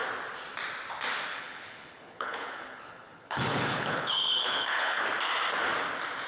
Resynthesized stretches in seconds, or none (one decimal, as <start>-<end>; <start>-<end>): 1.3-5.0